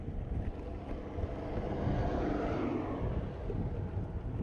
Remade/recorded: recorded